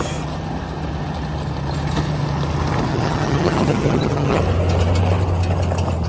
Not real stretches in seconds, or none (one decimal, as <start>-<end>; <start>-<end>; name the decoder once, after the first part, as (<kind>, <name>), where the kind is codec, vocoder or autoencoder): 2.9-4.4 (vocoder, HiFi-GAN)